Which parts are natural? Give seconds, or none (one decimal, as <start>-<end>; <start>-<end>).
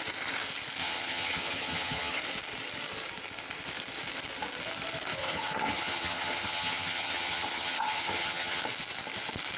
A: 0.0-0.8; 2.2-5.2; 8.6-9.6